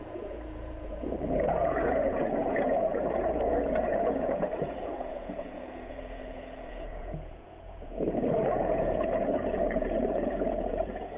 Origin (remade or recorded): remade